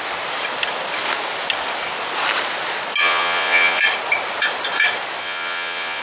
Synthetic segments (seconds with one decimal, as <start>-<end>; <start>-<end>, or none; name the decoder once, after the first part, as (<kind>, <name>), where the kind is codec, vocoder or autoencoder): 3.0-3.8 (vocoder, Vocos); 5.2-6.0